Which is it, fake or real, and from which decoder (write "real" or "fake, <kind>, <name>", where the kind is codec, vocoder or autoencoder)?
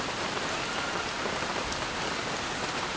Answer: real